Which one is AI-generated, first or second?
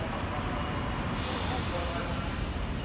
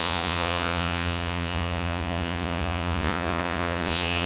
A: second